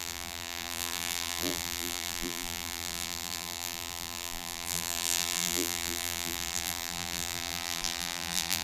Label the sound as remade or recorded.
remade